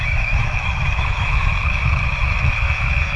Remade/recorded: remade